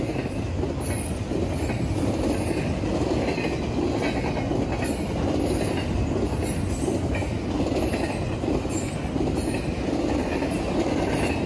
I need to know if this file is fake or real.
real